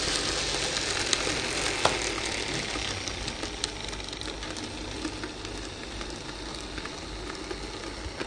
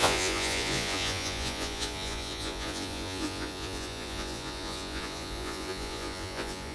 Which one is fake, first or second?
second